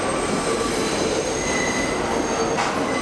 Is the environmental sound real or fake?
real